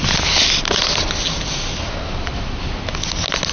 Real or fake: real